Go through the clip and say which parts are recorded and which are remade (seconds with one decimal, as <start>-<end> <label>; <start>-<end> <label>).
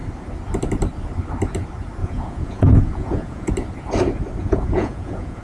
0.0-2.0 recorded; 2.0-3.5 remade; 3.5-4.4 recorded; 4.4-5.4 remade